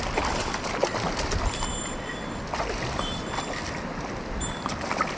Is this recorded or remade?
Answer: recorded